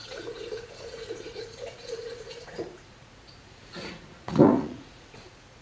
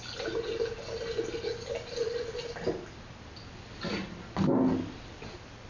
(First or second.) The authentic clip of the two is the second